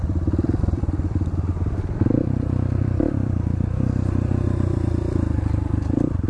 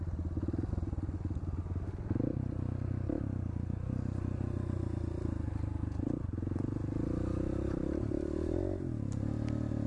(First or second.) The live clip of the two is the second